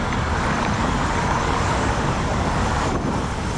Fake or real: fake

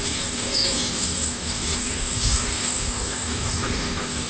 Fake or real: fake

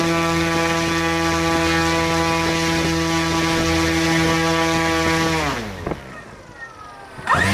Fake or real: real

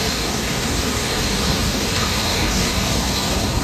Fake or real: fake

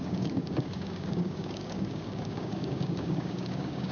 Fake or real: fake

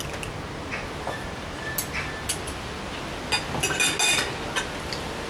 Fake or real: real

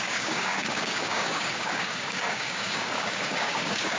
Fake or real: fake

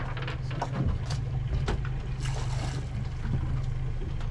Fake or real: real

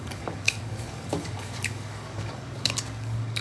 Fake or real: fake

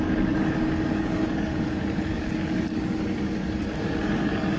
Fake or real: fake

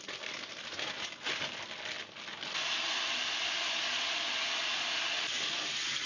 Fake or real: real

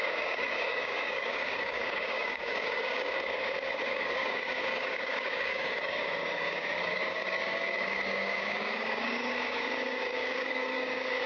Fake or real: fake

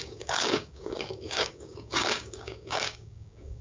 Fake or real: fake